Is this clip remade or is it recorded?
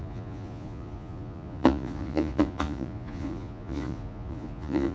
remade